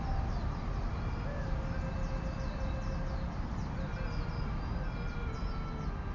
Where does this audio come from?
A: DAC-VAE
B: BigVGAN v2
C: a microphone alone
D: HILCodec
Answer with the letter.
C